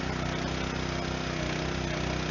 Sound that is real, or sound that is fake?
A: real